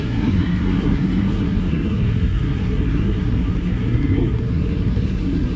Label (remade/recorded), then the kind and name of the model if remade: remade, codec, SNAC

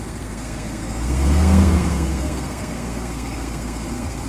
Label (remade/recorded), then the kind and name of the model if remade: remade, codec, SNAC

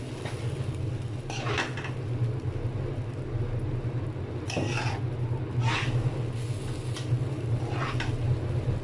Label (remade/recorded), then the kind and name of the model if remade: recorded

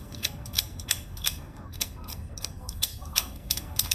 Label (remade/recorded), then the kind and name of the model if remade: remade, codec, SNAC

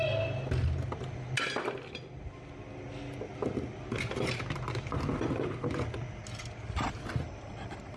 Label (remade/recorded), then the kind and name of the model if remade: recorded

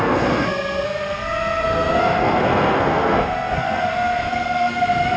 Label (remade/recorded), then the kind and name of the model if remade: remade, codec, SNAC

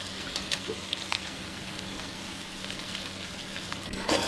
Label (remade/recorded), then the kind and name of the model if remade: remade, codec, SNAC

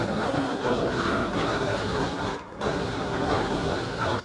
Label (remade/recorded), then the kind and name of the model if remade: remade, codec, SNAC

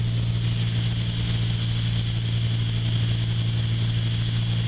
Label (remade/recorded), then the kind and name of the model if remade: recorded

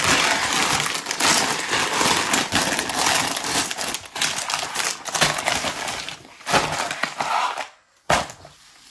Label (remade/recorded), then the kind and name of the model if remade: recorded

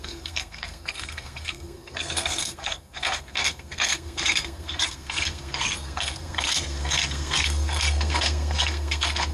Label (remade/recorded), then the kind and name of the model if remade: remade, codec, SNAC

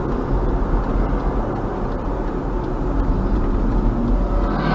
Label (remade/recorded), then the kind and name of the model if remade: recorded